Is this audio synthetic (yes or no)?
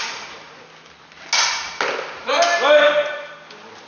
no